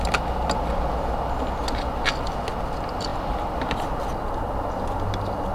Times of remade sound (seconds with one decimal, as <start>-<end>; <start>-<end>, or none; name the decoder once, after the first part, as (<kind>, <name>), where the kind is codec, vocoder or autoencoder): none

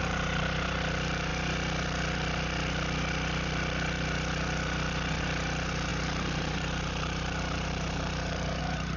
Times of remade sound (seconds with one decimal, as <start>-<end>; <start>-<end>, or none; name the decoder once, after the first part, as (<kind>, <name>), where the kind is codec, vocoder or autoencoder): 0.0-1.3 (vocoder, BigVGAN v2); 5.2-9.0

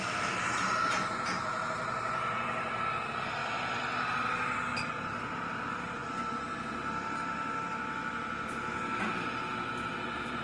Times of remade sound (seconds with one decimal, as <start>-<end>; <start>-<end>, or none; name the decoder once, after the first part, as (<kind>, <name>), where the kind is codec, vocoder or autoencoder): 0.0-3.4 (vocoder, BigVGAN v2); 4.9-6.0; 8.5-10.4

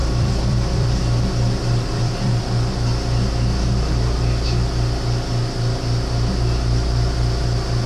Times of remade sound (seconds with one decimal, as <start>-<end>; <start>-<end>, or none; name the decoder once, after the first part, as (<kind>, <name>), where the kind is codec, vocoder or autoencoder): 0.0-2.4 (vocoder, BigVGAN v2)

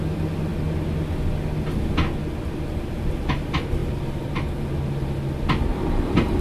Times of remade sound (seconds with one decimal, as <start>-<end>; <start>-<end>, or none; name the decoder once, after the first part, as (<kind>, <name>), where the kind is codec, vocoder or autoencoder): 3.8-4.6 (vocoder, BigVGAN v2); 5.7-6.4

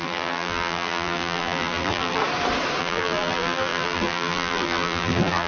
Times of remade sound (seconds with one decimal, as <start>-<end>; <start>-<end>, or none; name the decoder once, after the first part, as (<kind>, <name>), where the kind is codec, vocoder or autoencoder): 0.0-2.2 (vocoder, BigVGAN v2); 2.8-5.5